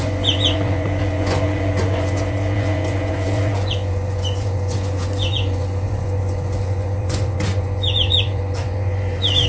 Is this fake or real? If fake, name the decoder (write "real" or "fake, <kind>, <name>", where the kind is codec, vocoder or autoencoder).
fake, vocoder, Vocos